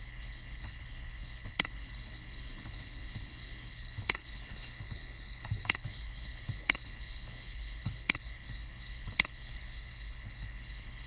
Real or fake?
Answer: fake